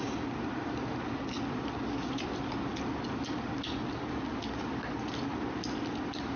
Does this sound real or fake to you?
real